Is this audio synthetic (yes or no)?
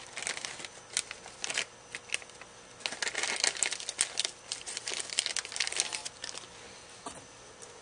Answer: no